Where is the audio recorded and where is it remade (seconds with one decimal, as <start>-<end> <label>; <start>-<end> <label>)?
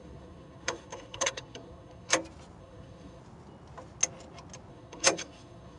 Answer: 0.0-2.1 remade; 2.1-2.6 recorded; 2.6-3.2 remade; 3.2-4.7 recorded; 4.7-5.8 remade